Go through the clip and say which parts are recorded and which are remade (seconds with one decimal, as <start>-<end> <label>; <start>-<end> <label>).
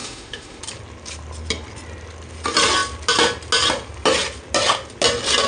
0.0-0.6 remade; 0.6-5.5 recorded